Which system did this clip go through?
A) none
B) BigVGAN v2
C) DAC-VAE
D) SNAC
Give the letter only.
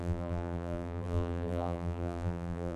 B